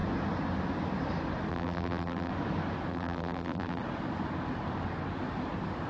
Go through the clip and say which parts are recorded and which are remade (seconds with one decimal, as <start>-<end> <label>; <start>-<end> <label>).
0.0-1.5 recorded; 1.5-2.3 remade; 2.3-2.9 recorded; 2.9-3.8 remade; 3.8-5.9 recorded